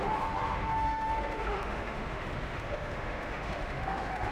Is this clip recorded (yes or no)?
no